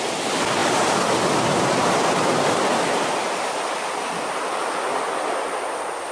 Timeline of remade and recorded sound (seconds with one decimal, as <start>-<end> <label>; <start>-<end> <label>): 0.0-6.1 recorded